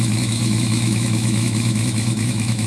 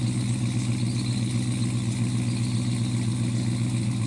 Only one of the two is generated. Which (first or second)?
first